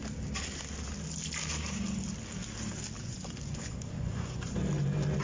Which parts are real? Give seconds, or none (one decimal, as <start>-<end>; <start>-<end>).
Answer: 0.0-3.0; 4.6-5.2